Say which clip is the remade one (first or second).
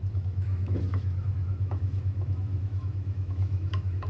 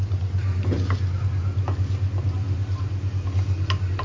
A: first